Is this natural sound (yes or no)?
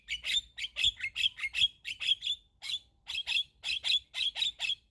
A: yes